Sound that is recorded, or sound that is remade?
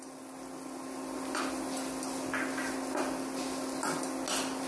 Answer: recorded